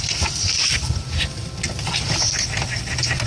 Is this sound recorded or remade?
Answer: recorded